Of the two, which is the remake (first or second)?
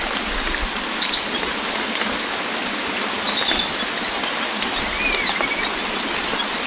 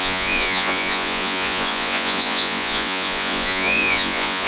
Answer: second